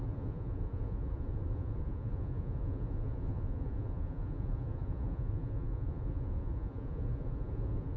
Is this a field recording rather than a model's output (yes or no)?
no